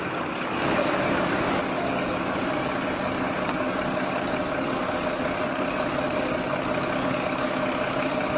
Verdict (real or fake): fake